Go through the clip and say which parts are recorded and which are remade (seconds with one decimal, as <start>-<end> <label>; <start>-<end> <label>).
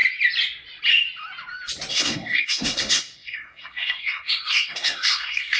0.0-1.9 recorded; 1.9-5.6 remade